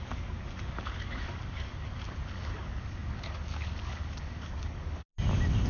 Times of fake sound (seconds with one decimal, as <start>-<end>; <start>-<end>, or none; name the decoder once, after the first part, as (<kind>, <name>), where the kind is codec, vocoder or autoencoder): 0.0-5.1 (codec, DAC)